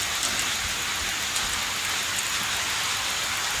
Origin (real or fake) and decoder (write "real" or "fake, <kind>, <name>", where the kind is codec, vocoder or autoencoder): real